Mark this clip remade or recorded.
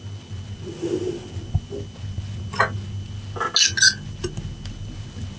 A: recorded